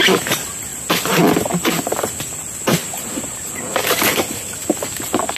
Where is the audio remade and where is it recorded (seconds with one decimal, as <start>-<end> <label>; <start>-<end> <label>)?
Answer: 0.0-0.7 recorded; 0.7-2.4 remade; 2.4-2.8 recorded; 2.8-4.8 remade; 4.8-5.4 recorded